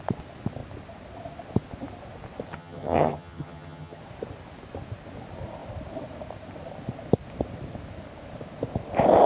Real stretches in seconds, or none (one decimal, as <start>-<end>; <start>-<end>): 0.0-2.5; 4.0-9.3